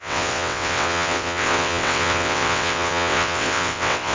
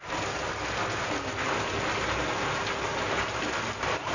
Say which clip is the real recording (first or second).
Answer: second